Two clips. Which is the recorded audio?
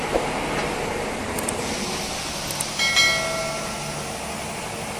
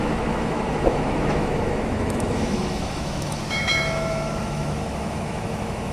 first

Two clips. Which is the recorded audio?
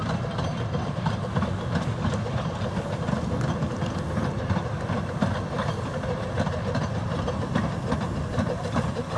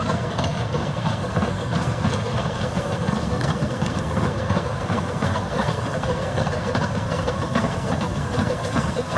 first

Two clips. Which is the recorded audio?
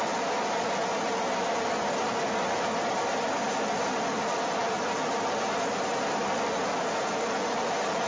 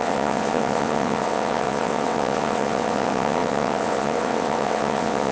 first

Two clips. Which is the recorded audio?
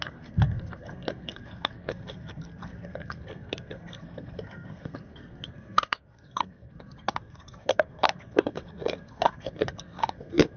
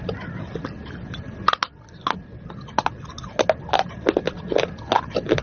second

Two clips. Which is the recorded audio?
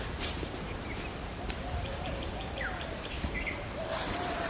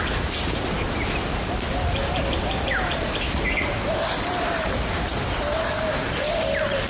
second